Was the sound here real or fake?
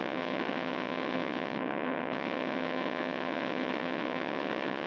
fake